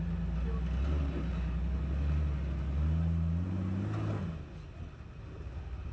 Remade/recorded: recorded